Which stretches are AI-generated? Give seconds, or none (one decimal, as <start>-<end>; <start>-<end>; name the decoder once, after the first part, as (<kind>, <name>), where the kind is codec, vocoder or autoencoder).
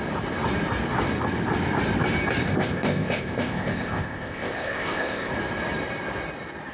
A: 2.5-5.3 (codec, ZipCodec)